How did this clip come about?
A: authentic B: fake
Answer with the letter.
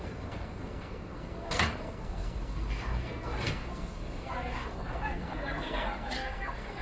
B